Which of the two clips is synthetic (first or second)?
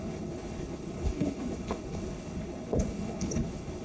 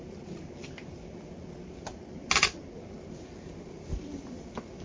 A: first